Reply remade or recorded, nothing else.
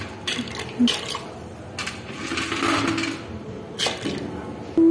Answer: recorded